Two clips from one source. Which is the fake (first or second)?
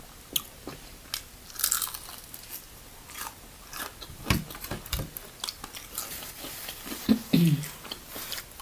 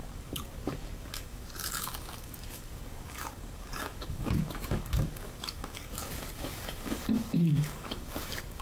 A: second